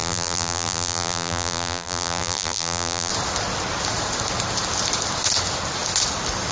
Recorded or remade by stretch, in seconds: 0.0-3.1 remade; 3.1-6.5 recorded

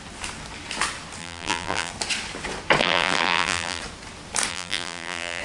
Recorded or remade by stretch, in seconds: 0.0-1.2 recorded; 1.2-1.9 remade; 1.9-2.8 recorded; 2.8-3.8 remade; 3.8-4.5 recorded; 4.5-5.4 remade

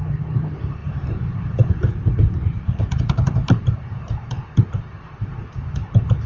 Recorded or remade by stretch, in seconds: 0.0-6.3 remade

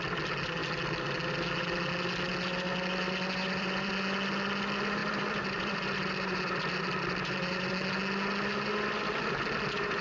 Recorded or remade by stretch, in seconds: 0.0-2.3 recorded; 2.3-3.9 remade; 3.9-5.0 recorded; 5.0-7.7 remade; 7.7-10.0 recorded

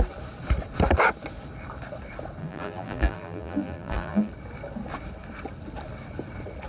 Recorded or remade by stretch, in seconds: 0.0-2.4 recorded; 2.4-4.3 remade; 4.3-6.7 recorded